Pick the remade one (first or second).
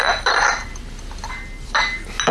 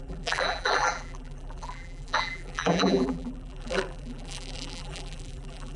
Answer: second